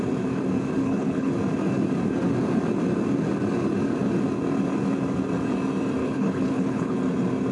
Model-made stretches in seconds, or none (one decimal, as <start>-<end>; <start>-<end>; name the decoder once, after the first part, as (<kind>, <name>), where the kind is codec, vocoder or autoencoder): 0.8-1.3 (codec, HILCodec); 6.0-7.0